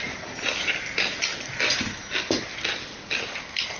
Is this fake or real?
real